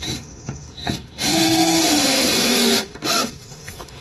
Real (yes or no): no